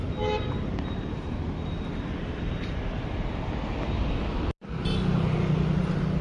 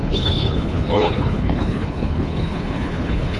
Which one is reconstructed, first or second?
second